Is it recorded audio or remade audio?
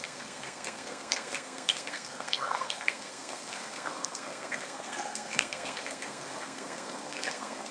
remade